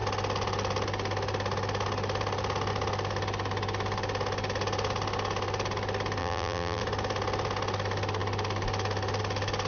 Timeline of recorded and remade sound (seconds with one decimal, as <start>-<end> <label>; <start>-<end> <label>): 0.0-6.2 recorded; 6.2-6.8 remade; 6.8-9.7 recorded